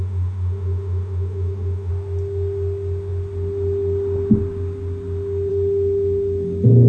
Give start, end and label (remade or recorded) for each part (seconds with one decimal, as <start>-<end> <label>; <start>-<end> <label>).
0.0-1.9 remade; 1.9-6.9 recorded